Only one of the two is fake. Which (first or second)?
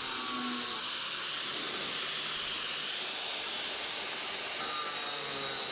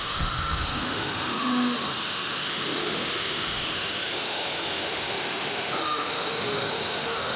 second